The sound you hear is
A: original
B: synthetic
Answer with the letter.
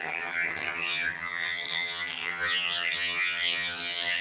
B